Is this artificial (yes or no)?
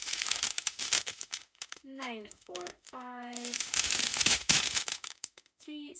yes